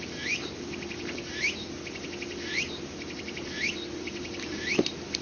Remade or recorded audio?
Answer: recorded